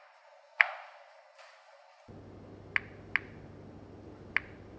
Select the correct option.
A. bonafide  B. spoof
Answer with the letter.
A